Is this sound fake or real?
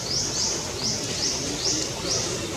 real